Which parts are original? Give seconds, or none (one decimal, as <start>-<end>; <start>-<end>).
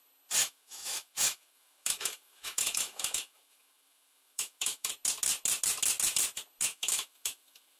0.0-0.4; 4.9-6.7